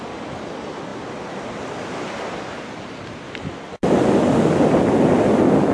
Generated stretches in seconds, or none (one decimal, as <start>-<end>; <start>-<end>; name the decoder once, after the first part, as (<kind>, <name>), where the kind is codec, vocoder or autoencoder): none